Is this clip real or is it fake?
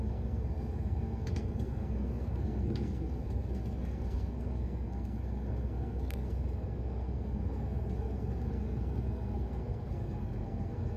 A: fake